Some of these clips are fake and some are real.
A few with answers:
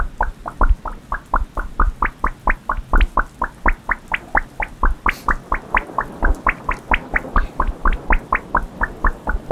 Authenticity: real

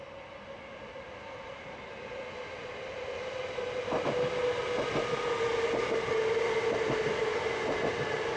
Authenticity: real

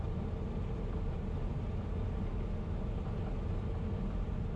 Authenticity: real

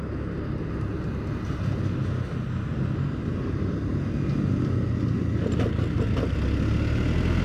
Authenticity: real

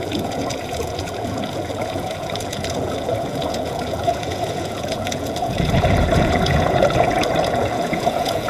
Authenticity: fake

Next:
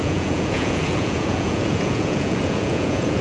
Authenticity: fake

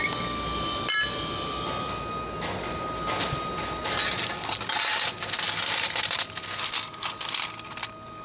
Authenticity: real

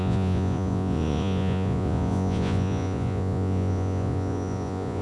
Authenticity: fake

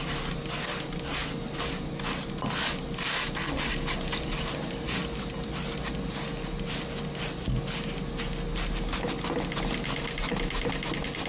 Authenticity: real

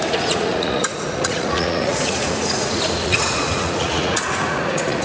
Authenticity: fake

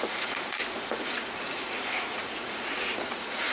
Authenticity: fake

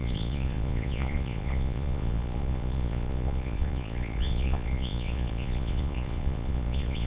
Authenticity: fake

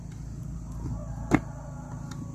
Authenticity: real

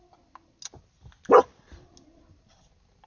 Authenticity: real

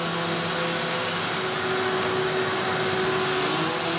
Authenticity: real